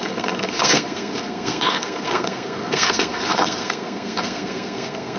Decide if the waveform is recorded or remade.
remade